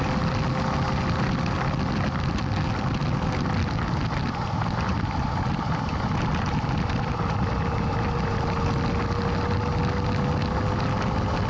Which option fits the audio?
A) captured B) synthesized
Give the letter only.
A